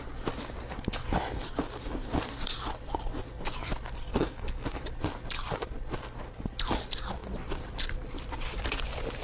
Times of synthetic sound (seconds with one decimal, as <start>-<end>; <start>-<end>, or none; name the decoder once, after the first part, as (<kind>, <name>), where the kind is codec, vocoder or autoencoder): 4.1-4.8 (codec, DAC)